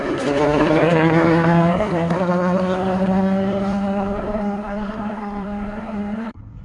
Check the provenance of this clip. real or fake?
fake